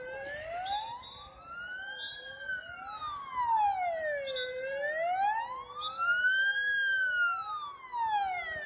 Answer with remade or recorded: recorded